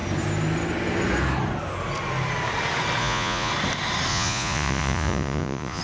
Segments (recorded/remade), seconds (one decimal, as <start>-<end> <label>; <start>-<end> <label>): 0.0-3.0 recorded; 3.0-3.5 remade; 3.5-4.1 recorded; 4.1-5.8 remade